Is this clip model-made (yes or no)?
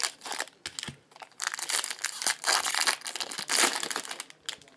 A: no